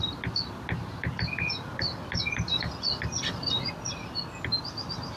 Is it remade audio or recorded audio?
recorded